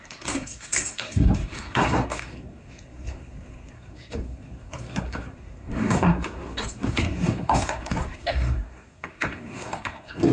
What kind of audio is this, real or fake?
fake